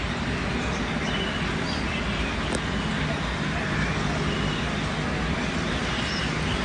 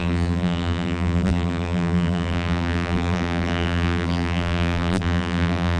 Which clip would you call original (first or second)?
first